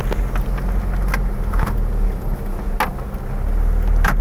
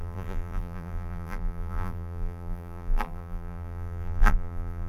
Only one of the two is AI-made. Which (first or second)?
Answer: second